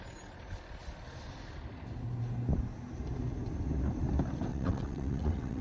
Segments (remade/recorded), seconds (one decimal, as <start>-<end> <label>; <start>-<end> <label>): 0.0-4.5 recorded; 4.5-5.6 remade